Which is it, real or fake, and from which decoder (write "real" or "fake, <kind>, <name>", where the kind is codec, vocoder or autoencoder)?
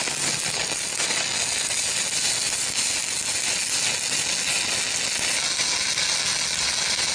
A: real